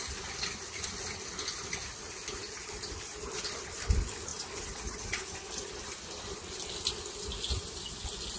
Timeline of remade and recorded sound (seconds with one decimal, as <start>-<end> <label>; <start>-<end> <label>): 0.0-8.4 recorded